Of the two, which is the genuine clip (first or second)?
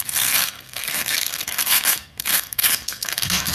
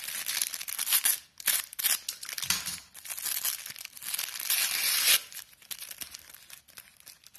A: second